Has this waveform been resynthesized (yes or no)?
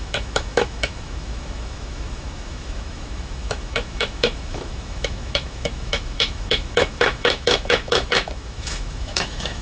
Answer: yes